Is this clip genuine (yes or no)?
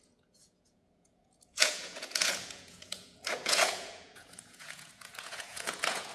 no